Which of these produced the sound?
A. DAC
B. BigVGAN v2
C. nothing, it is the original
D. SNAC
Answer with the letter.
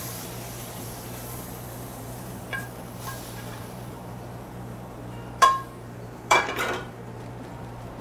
B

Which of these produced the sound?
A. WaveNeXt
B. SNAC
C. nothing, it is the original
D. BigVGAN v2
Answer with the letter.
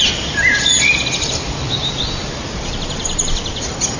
D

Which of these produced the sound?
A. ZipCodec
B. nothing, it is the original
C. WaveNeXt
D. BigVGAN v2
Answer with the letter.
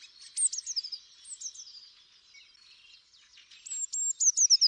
B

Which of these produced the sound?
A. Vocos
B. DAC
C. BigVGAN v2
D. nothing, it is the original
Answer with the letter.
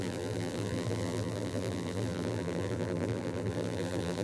C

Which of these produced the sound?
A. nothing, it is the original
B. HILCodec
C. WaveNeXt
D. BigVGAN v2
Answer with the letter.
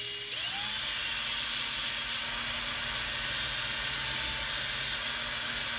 A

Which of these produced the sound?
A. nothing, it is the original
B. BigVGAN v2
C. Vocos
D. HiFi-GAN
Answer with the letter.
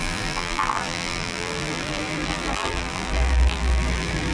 B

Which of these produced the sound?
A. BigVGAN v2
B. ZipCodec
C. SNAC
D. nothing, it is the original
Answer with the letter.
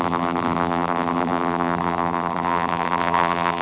A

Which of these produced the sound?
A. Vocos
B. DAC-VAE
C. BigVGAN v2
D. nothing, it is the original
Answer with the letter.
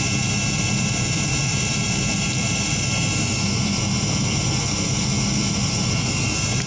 C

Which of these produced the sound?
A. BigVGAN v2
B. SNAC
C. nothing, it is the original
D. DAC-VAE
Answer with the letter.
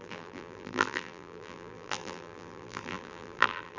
A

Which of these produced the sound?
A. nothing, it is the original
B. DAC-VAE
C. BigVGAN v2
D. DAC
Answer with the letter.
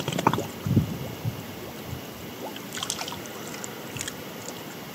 A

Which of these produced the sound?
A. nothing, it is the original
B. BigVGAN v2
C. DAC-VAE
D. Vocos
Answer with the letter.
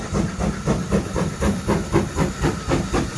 B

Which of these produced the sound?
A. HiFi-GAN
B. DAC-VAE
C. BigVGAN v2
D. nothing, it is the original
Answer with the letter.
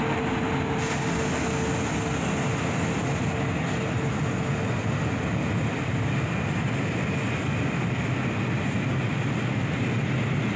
D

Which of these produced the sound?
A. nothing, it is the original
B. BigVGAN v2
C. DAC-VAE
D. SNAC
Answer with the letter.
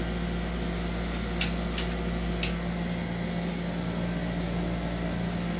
A